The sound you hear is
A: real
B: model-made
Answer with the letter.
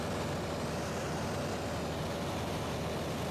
A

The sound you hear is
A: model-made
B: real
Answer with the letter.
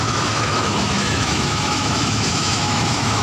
A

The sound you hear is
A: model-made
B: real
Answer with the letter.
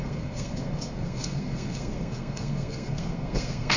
A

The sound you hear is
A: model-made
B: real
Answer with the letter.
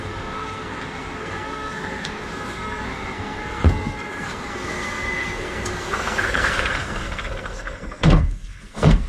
A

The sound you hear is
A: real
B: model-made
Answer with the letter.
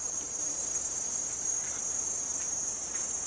A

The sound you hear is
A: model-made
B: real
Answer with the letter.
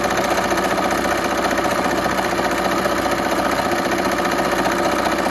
B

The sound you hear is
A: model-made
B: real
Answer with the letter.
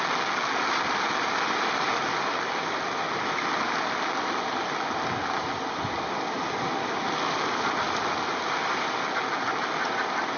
B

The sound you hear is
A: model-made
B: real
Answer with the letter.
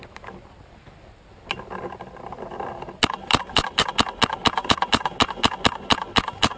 B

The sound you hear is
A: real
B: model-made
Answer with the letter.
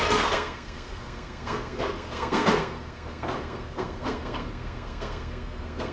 B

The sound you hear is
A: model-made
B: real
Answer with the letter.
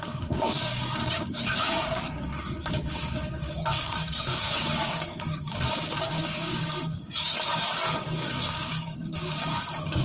A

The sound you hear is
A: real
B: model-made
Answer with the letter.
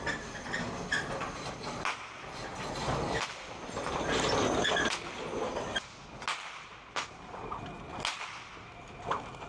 A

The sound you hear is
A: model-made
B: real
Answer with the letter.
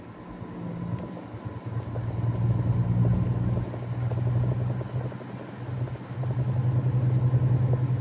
B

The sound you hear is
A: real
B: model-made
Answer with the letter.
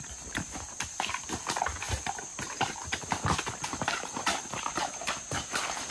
B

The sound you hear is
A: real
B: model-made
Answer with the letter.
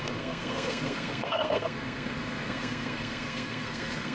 B